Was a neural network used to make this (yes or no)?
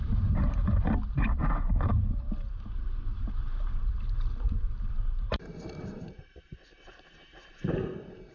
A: yes